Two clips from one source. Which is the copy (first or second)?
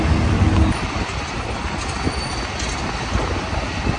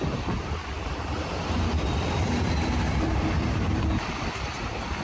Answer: second